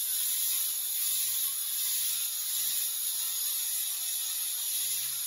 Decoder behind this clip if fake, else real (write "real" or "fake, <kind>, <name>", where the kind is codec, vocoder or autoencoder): fake, vocoder, BigVGAN v2